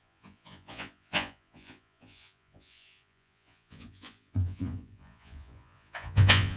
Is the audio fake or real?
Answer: fake